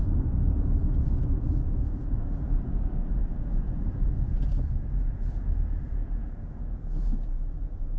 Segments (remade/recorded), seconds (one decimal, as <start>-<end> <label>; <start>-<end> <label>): 0.0-8.0 remade